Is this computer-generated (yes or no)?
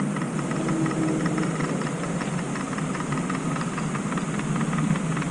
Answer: no